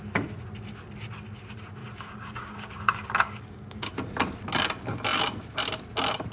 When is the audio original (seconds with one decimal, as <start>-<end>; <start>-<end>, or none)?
0.0-1.8; 3.9-6.3